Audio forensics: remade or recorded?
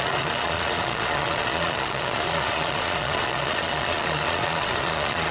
remade